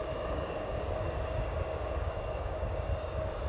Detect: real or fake fake